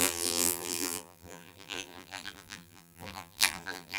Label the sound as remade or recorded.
remade